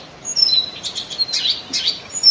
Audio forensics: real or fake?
real